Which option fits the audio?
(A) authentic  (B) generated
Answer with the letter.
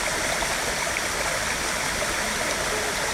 A